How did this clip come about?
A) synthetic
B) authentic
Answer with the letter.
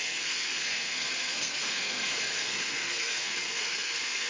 A